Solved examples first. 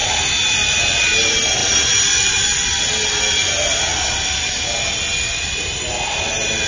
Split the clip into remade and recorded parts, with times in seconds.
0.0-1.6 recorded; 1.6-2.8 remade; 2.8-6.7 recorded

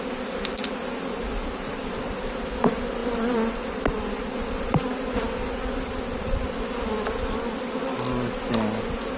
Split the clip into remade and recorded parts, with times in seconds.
0.0-1.4 recorded; 1.4-2.3 remade; 2.3-3.0 recorded; 3.0-7.8 remade; 7.8-9.2 recorded

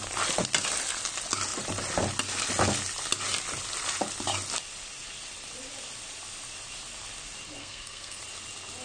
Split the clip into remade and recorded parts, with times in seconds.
0.0-7.6 recorded; 7.6-8.2 remade; 8.2-8.8 recorded

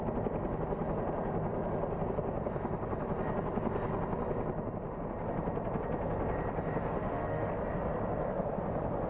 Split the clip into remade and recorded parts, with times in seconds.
0.0-6.9 recorded; 6.9-7.5 remade; 7.5-9.1 recorded

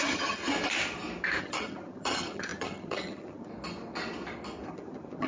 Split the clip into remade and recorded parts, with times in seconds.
0.0-0.4 remade; 0.4-1.4 recorded; 1.4-3.5 remade; 3.5-4.7 recorded; 4.7-5.3 remade

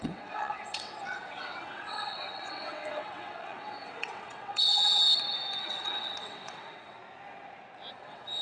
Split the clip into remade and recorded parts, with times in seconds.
0.0-5.0 remade; 5.0-5.6 recorded; 5.6-7.0 remade; 7.0-7.9 recorded; 7.9-8.4 remade